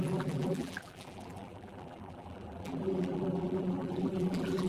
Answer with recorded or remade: remade